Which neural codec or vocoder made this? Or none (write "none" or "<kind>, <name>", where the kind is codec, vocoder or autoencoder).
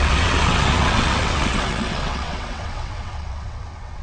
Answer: vocoder, WaveNeXt